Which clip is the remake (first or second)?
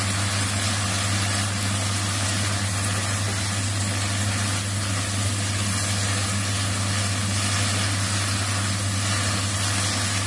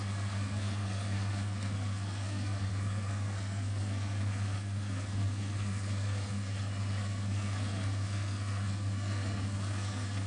second